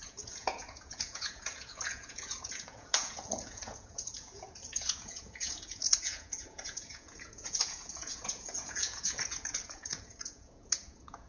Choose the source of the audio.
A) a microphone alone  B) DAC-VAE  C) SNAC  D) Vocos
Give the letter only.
D